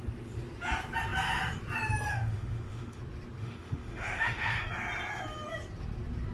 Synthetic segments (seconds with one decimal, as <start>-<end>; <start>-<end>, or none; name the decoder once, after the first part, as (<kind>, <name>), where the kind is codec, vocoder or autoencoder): 2.1-3.0 (autoencoder, DAC-VAE); 3.4-4.6